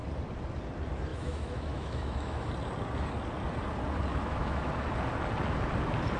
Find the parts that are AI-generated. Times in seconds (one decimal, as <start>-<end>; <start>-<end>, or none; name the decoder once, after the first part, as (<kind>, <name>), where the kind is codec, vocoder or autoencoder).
1.1-2.5 (autoencoder, DAC-VAE); 4.1-4.7